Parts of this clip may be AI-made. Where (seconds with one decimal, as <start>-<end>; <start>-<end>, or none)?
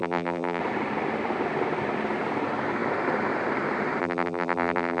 0.0-0.6; 4.0-5.0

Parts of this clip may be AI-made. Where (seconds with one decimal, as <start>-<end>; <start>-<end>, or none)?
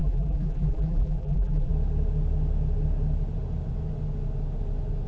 0.0-1.7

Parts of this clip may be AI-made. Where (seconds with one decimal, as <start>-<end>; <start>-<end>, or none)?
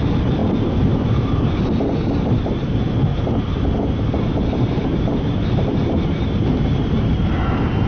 0.4-1.4; 3.1-7.3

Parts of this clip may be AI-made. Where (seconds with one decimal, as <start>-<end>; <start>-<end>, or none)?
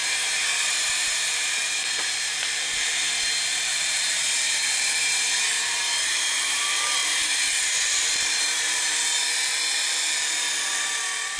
0.0-1.3; 3.7-6.6; 7.0-9.0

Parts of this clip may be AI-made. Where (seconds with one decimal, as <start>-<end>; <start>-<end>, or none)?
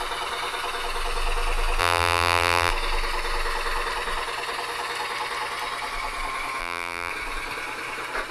1.8-2.7; 6.6-7.1